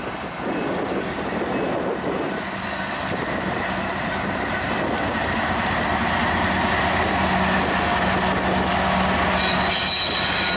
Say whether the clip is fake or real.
real